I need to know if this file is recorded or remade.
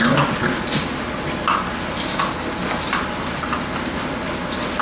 recorded